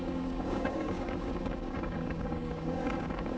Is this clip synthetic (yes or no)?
yes